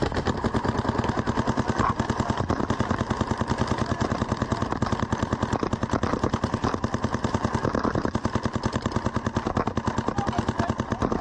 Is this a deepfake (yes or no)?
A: no